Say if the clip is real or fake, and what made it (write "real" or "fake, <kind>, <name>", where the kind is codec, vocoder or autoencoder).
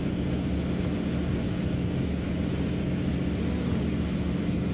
real